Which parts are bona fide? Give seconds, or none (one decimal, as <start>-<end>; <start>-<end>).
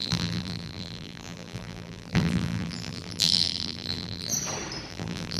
4.3-4.9